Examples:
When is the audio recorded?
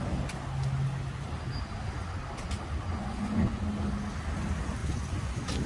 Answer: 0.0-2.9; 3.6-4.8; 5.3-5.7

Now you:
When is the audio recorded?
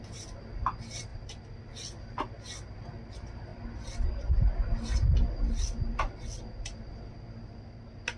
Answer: 0.0-8.2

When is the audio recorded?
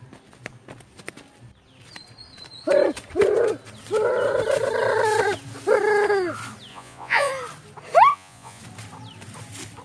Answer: 0.0-6.7; 7.3-8.1; 8.6-9.8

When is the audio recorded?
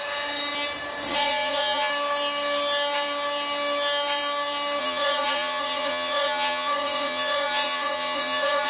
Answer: 0.0-1.1; 1.9-4.8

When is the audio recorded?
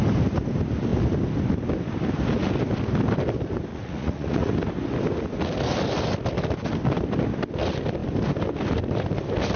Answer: 0.0-3.7; 4.5-9.6